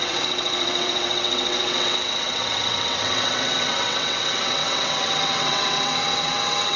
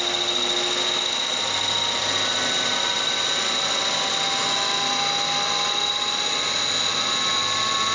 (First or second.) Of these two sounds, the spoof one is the first